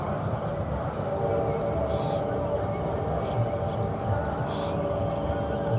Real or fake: real